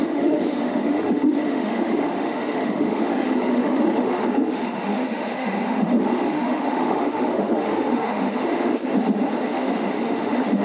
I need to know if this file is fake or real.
fake